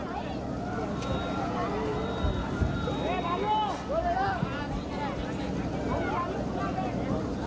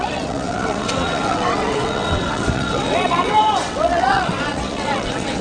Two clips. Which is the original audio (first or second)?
first